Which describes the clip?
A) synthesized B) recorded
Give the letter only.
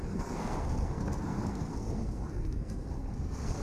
A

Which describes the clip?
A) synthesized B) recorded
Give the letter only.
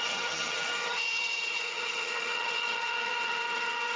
A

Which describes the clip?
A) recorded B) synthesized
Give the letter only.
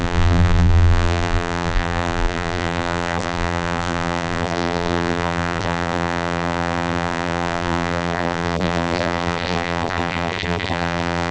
B